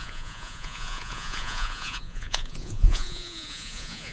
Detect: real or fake fake